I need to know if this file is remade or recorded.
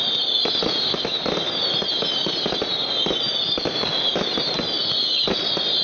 recorded